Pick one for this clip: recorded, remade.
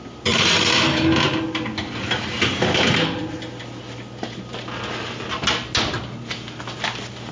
recorded